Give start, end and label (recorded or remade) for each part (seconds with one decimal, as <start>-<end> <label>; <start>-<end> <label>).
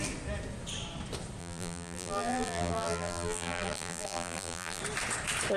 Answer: 0.0-1.4 recorded; 1.4-4.8 remade; 4.8-5.6 recorded